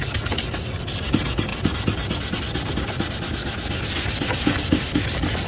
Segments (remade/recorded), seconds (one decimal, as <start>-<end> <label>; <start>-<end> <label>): 0.0-5.5 recorded